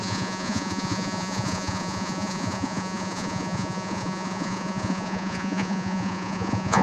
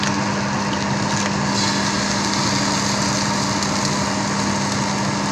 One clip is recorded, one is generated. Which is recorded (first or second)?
second